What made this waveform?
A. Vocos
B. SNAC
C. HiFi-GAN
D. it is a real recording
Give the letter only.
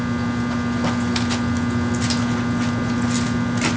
D